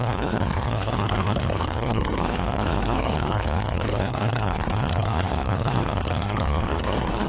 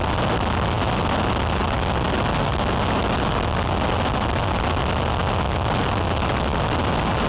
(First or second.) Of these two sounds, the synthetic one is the first